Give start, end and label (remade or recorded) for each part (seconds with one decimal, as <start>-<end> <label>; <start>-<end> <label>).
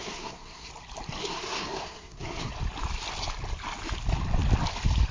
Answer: 0.0-0.7 remade; 0.7-1.2 recorded; 1.2-2.5 remade; 2.5-5.1 recorded